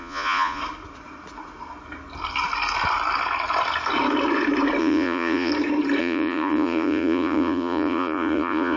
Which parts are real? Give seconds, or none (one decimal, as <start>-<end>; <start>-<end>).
0.6-4.8; 5.5-6.0